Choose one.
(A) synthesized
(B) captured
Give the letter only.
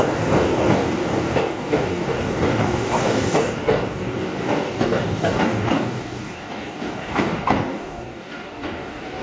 A